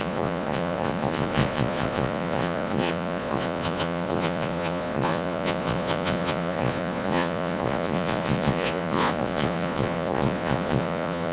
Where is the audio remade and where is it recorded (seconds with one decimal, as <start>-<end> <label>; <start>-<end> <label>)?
0.0-11.3 remade